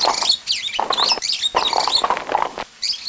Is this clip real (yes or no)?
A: yes